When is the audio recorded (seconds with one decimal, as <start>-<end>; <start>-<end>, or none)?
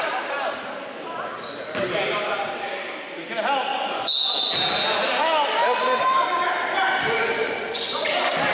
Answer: 0.0-3.7; 4.5-7.4; 8.0-8.5